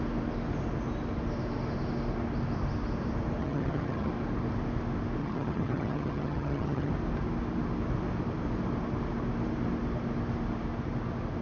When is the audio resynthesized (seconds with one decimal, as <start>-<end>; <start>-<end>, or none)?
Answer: 3.4-4.1; 5.2-6.9